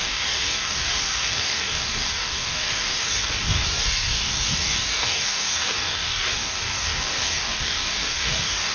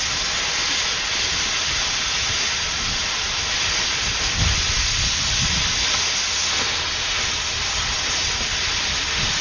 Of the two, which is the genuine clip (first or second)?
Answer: second